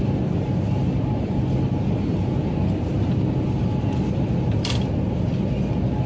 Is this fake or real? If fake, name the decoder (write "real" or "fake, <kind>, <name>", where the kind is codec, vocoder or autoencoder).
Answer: real